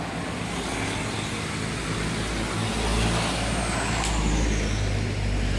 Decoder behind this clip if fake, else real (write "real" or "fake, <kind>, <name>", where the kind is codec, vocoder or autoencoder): real